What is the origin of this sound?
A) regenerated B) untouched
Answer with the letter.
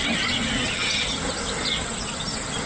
B